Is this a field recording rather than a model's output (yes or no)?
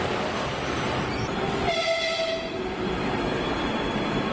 no